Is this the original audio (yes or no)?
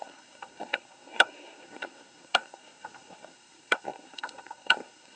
no